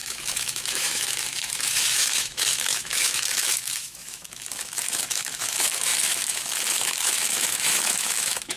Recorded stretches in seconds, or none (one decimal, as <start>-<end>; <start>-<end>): none